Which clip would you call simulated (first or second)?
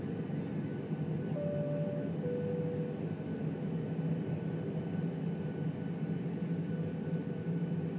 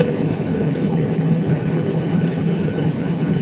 second